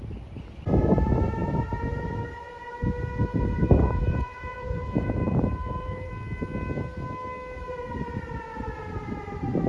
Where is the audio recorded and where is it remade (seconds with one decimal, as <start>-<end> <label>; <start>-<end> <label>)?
0.0-1.4 recorded; 1.4-2.7 remade; 2.7-3.3 recorded; 3.3-6.1 remade; 6.1-9.7 recorded